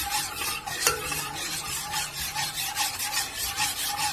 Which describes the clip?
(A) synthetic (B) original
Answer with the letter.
A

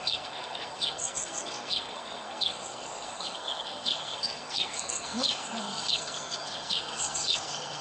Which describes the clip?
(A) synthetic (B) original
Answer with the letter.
A